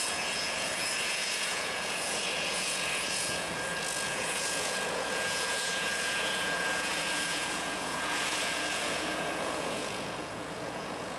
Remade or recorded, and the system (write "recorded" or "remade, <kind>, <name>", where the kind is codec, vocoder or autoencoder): remade, vocoder, Vocos